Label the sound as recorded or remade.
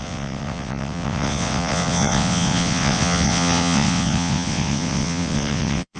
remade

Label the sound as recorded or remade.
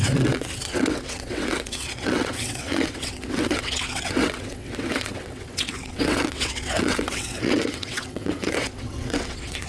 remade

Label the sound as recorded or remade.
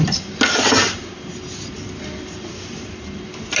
recorded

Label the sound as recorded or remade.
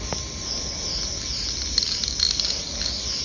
recorded